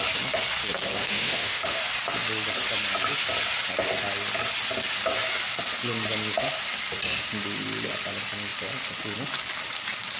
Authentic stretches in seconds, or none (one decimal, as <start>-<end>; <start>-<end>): 0.0-1.0; 1.8-10.2